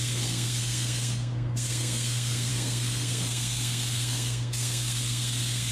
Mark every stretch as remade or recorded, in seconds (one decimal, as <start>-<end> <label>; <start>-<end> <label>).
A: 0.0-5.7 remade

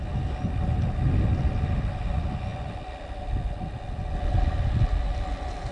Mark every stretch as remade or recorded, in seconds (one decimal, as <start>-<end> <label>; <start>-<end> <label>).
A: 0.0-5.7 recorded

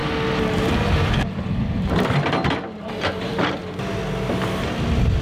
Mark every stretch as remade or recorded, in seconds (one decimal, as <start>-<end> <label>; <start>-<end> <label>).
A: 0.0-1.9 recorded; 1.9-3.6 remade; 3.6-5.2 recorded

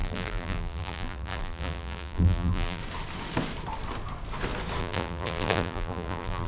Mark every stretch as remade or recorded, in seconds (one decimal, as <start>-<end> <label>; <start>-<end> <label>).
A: 0.0-2.8 remade; 2.8-4.8 recorded; 4.8-6.5 remade

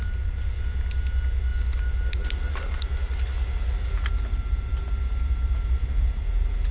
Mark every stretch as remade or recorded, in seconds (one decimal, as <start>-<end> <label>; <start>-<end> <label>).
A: 0.0-6.7 recorded

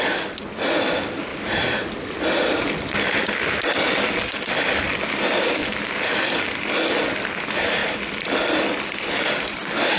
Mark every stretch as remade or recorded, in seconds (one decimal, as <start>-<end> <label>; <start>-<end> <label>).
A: 0.0-1.3 recorded; 1.3-2.9 remade; 2.9-7.8 recorded; 7.8-9.3 remade; 9.3-10.0 recorded